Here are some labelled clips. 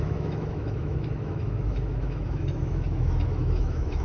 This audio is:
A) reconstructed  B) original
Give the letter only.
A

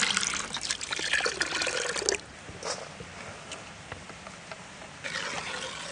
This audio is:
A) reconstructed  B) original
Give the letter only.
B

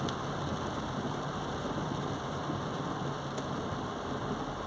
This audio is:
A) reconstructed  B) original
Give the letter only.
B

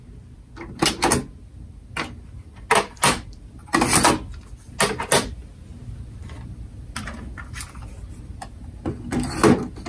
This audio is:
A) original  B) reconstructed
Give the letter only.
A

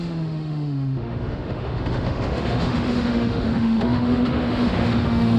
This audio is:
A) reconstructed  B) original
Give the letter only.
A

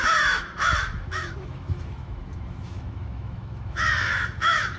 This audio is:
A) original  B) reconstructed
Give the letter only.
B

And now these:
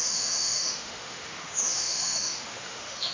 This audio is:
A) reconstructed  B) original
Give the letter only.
A